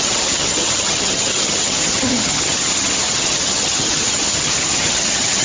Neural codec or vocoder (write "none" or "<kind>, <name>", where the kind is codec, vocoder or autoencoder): vocoder, HiFi-GAN